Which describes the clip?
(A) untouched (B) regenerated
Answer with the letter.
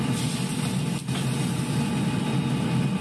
A